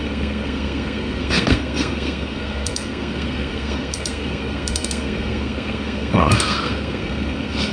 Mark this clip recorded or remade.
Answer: remade